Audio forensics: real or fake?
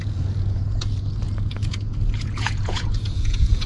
fake